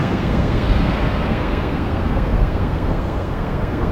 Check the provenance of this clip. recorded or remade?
remade